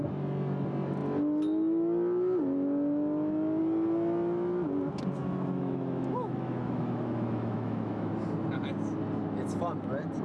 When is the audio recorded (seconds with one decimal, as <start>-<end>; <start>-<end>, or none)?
0.0-5.2; 8.1-10.2